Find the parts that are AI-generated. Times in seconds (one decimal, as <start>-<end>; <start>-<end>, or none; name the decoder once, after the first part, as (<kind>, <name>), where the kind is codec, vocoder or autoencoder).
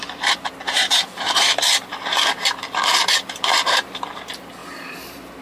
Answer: 0.0-5.4 (vocoder, BigVGAN v2)